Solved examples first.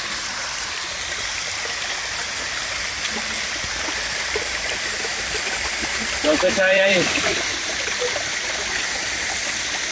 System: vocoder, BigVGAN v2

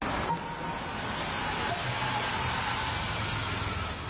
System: none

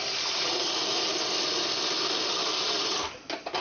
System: none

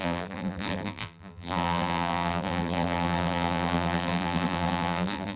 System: vocoder, BigVGAN v2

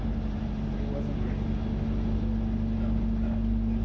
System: none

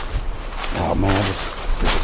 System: none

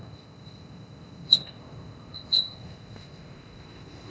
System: codec, ZipCodec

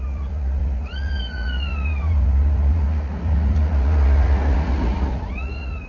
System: vocoder, Vocos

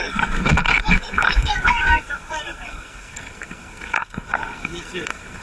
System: codec, SNAC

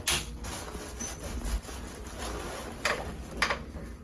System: none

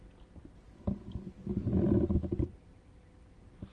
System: none